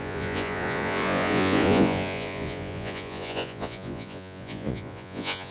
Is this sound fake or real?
fake